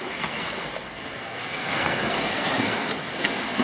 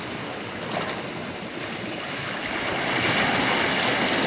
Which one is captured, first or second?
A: second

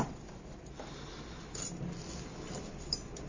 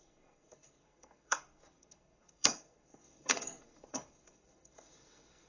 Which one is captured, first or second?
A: first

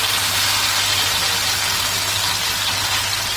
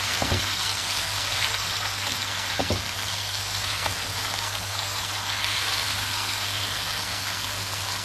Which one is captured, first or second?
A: first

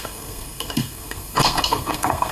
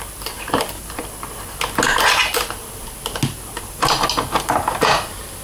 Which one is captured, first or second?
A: second